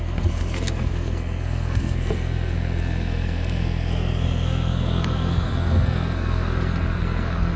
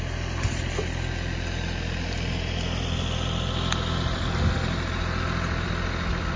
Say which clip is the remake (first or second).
first